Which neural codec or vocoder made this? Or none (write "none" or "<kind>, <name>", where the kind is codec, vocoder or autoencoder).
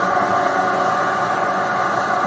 vocoder, Vocos